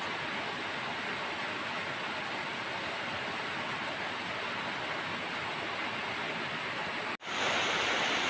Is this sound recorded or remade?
recorded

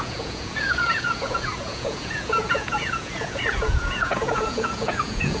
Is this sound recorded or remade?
remade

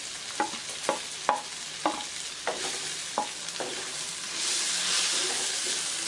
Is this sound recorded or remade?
recorded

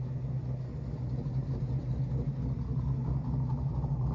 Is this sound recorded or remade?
recorded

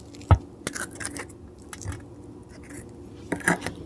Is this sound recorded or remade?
recorded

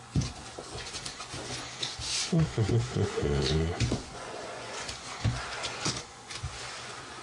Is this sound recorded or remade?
remade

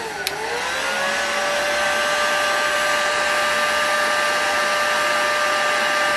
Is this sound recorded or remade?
recorded